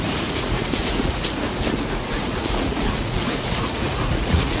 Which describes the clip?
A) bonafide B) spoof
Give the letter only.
B